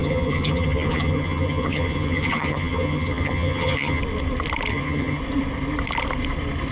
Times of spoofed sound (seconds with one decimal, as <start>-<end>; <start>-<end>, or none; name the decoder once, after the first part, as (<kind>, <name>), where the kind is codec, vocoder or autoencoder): 0.0-4.0 (vocoder, HiFi-GAN); 4.7-5.2